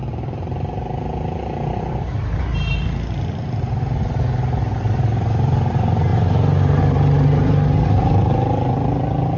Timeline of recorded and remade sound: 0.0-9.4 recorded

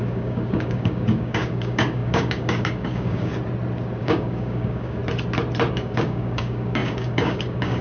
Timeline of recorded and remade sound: 0.0-3.3 remade; 3.3-4.0 recorded; 4.0-5.0 remade; 5.0-5.7 recorded; 5.7-7.8 remade

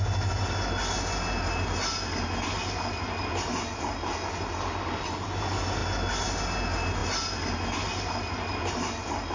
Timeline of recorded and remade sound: 0.0-9.3 recorded

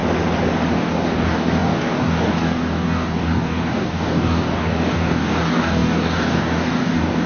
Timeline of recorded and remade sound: 0.0-0.8 recorded; 0.8-7.3 remade

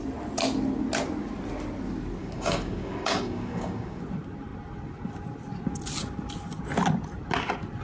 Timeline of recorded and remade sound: 0.0-2.2 recorded; 2.2-4.0 remade; 4.0-7.8 recorded

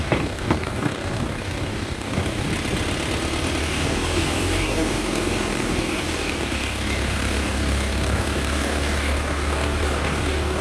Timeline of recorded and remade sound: 0.0-2.5 remade; 2.5-3.6 recorded; 3.6-10.6 remade

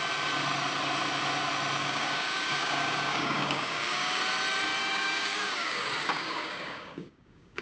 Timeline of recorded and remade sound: 0.0-1.8 recorded; 1.8-4.2 remade; 4.2-4.8 recorded; 4.8-7.6 remade